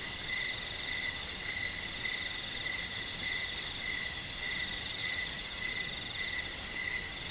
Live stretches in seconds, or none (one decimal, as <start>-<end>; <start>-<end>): 0.0-5.0; 5.7-7.3